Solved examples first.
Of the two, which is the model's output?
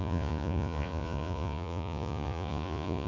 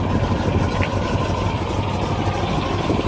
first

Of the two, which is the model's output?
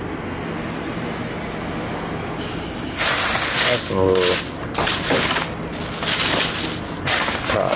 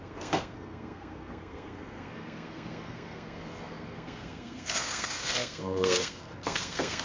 second